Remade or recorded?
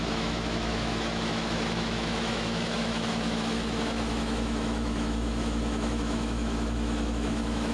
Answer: remade